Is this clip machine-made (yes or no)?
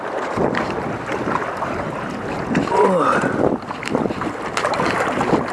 no